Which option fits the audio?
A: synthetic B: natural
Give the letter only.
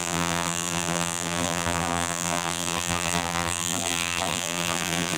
A